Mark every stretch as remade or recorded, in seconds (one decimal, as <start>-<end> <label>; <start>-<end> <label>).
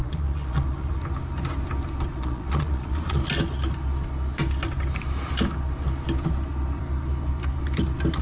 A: 0.0-1.0 remade; 1.0-2.1 recorded; 2.1-3.2 remade; 3.2-8.2 recorded